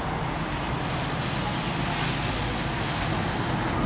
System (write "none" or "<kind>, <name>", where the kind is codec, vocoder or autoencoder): none